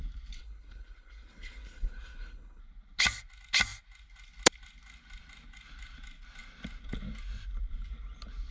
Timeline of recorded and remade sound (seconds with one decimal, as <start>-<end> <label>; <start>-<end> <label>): 0.0-0.4 recorded; 0.4-2.6 remade; 2.6-8.5 recorded